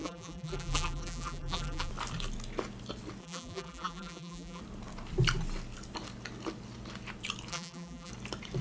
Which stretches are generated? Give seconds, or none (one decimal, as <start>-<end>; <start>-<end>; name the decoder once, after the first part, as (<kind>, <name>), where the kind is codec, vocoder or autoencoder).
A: 0.0-1.9 (vocoder, BigVGAN v2); 3.2-4.6; 7.5-8.1